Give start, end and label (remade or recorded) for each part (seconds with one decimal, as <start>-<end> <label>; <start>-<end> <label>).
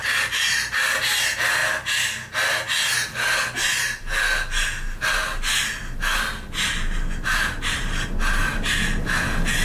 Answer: 0.0-9.6 recorded